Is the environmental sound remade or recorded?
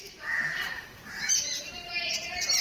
remade